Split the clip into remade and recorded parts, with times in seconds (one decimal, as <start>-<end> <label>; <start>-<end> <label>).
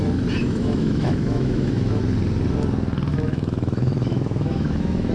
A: 0.0-0.4 recorded; 0.4-2.0 remade; 2.0-3.1 recorded; 3.1-5.1 remade